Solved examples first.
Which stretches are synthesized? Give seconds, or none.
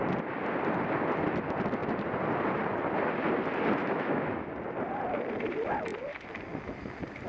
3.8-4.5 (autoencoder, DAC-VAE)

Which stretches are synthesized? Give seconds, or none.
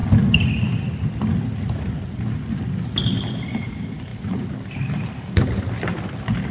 none